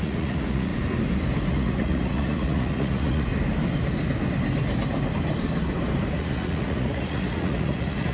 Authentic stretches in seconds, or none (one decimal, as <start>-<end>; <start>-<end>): 0.7-1.5; 3.3-6.1